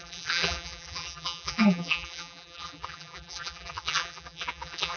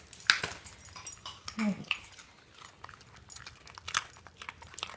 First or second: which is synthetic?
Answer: first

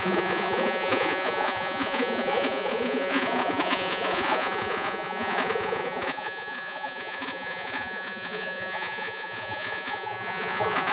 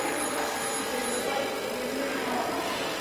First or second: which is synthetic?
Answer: first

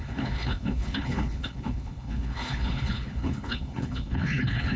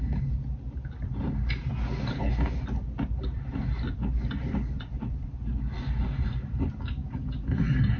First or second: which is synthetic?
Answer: first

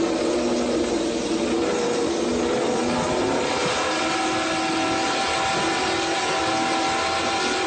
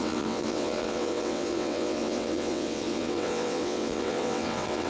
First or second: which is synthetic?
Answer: second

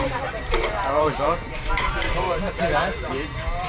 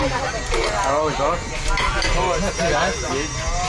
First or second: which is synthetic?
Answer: first